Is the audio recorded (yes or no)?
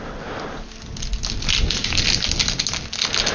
yes